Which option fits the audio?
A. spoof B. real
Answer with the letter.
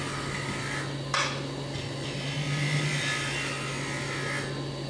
B